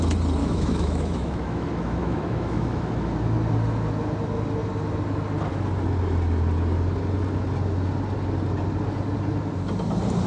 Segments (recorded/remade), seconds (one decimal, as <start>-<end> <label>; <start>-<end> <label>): 0.0-0.4 recorded; 0.4-3.1 remade; 3.1-10.3 recorded